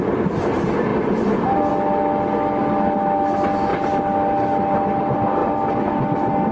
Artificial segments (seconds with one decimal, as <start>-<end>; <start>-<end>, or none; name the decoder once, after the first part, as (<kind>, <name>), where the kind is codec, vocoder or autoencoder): none